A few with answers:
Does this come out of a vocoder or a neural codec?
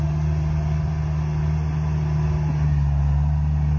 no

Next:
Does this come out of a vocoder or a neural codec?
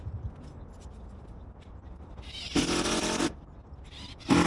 no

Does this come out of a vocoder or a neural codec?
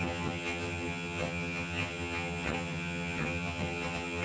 yes